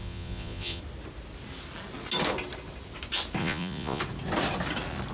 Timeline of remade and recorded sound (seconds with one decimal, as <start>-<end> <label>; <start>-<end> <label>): 0.0-0.8 remade; 0.8-3.4 recorded; 3.4-4.0 remade; 4.0-5.1 recorded